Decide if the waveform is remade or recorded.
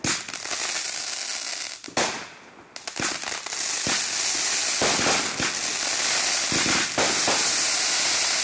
recorded